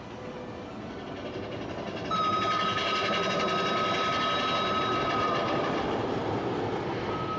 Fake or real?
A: real